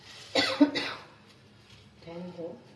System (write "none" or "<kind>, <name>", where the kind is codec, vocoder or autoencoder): none